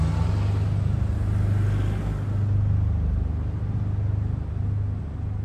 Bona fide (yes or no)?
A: yes